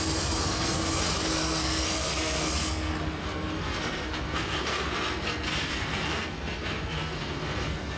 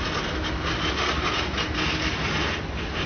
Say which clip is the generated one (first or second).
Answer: first